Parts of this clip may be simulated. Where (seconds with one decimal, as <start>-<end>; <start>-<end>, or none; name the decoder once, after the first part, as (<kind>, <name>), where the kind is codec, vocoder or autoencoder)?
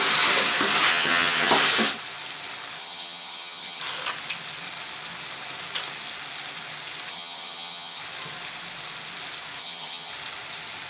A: 0.9-1.5 (vocoder, HiFi-GAN); 2.8-3.8; 7.1-8.0; 9.6-10.1